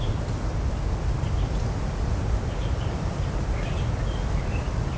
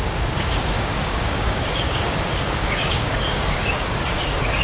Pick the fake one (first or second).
second